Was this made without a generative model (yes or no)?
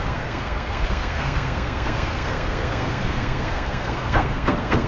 no